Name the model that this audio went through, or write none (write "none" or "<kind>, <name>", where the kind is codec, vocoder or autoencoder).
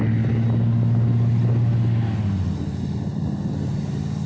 none